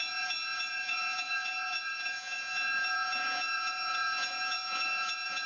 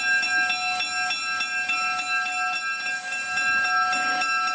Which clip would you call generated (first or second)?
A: first